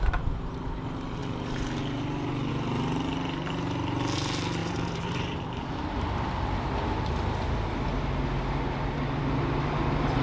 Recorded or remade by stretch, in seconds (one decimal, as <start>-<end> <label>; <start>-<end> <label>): 0.0-4.6 recorded; 4.6-6.3 remade; 6.3-10.2 recorded